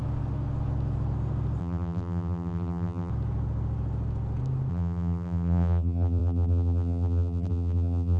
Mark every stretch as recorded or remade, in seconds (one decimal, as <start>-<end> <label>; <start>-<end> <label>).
0.0-1.6 recorded; 1.6-3.1 remade; 3.1-4.7 recorded; 4.7-8.2 remade